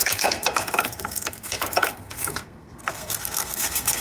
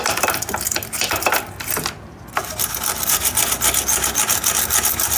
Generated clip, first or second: first